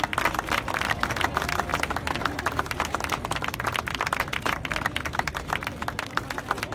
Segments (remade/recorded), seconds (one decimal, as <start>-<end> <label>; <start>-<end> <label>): 0.0-6.7 recorded